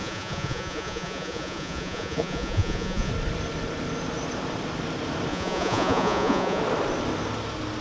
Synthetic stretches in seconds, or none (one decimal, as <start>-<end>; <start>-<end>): 0.0-3.1; 5.3-6.6